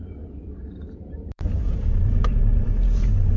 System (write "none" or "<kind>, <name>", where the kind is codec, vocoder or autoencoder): vocoder, BigVGAN v2